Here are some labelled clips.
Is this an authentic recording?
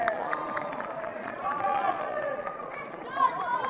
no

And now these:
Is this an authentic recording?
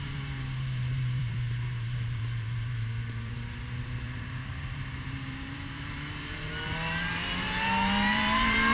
no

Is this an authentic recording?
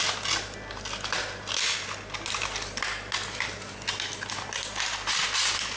yes